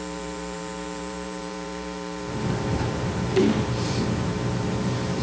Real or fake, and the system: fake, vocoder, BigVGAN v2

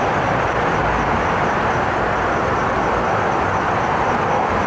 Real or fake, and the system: fake, vocoder, BigVGAN v2